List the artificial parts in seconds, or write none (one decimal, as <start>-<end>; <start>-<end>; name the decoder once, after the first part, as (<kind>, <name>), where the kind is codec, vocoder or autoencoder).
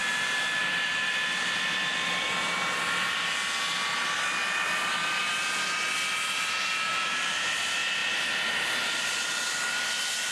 0.0-2.6 (vocoder, BigVGAN v2); 6.9-7.5; 8.0-9.2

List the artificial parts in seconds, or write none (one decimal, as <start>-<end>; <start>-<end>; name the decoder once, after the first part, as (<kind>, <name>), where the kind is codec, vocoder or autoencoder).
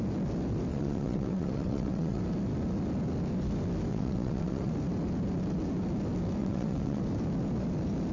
0.7-2.2 (vocoder, WaveNeXt); 3.9-4.7; 6.4-7.0